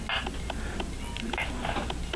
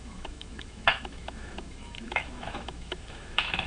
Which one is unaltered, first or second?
first